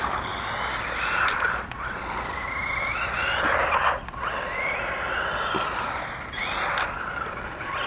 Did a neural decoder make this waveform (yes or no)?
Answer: no